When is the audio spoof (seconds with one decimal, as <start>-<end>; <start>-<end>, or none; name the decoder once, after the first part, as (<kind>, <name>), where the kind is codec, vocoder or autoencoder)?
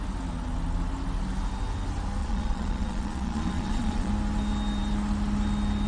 2.2-4.1 (vocoder, Vocos)